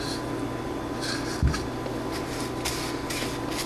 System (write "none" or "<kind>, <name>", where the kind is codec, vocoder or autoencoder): none